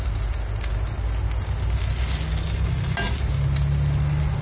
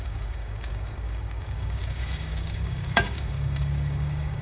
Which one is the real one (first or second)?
first